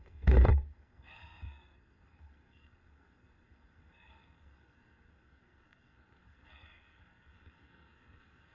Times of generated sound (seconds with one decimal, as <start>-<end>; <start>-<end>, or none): 0.0-8.5